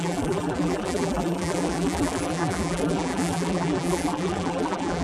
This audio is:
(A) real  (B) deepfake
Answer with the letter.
B